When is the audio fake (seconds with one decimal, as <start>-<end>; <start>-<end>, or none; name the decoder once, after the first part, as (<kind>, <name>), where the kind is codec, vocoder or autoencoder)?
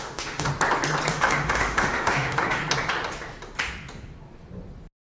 0.0-0.5 (autoencoder, DAC-VAE); 1.1-2.6